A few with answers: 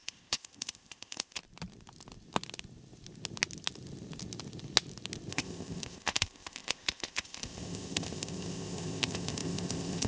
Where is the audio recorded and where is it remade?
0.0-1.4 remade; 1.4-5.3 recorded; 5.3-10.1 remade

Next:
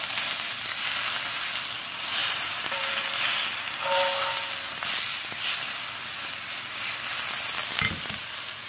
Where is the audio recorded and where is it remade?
0.0-2.2 recorded; 2.2-3.2 remade; 3.2-8.7 recorded

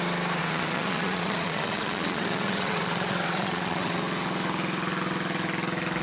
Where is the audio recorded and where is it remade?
0.0-0.4 recorded; 0.4-4.0 remade; 4.0-6.0 recorded

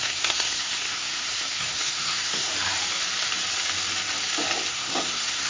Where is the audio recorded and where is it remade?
0.0-2.5 remade; 2.5-4.7 recorded; 4.7-5.5 remade